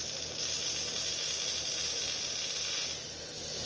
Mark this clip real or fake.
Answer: real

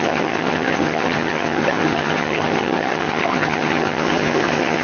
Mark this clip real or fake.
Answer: fake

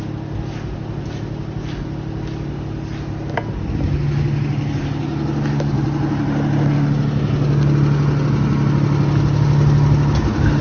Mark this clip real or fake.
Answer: real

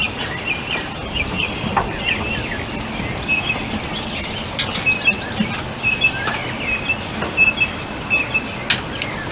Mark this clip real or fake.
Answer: real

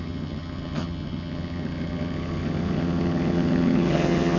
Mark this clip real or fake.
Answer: fake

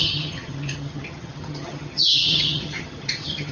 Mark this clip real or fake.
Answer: fake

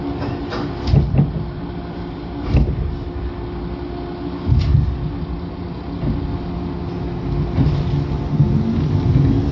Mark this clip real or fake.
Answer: real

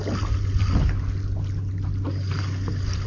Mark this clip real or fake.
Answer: real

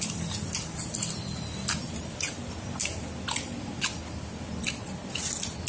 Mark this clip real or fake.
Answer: real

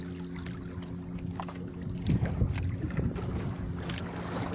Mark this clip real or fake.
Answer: real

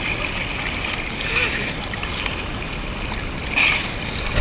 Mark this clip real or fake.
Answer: real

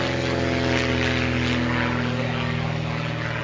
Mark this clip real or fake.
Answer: real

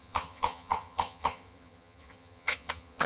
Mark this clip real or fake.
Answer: fake